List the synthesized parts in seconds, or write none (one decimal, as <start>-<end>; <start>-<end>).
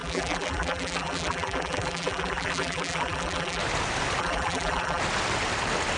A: 0.0-3.6; 4.2-5.0